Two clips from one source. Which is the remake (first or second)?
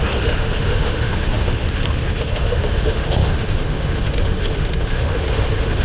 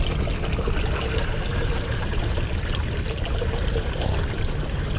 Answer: first